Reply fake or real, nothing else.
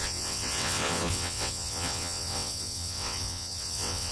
fake